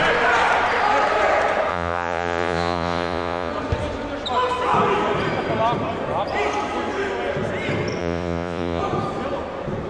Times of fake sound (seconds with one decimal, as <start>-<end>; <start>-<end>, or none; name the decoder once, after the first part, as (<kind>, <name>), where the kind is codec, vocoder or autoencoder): 1.7-3.5 (vocoder, Vocos); 8.0-8.8